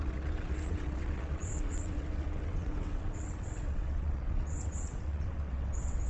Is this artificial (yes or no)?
yes